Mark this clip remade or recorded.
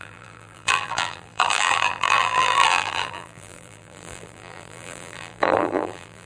remade